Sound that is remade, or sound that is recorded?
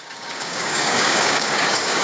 remade